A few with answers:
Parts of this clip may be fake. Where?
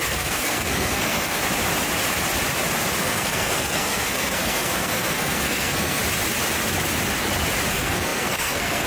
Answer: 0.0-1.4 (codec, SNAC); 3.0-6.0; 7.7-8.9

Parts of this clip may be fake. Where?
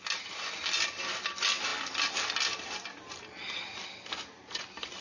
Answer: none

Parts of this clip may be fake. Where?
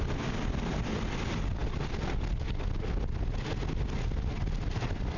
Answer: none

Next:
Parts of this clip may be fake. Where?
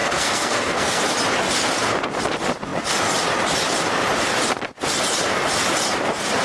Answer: 0.0-1.0 (codec, SNAC)